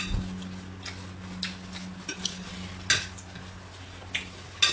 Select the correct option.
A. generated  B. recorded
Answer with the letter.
B